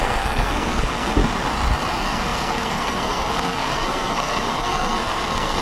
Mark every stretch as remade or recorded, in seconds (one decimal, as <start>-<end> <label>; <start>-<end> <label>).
0.0-1.2 remade; 1.2-1.9 recorded; 1.9-5.6 remade